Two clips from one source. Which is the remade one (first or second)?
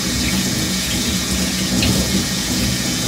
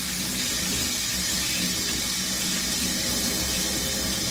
first